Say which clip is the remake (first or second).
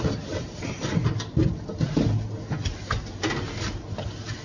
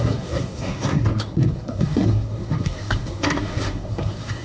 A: second